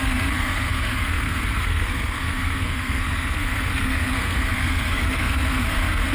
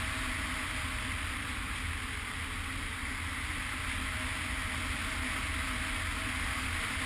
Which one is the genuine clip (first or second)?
second